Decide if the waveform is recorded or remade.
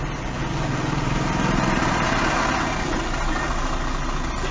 recorded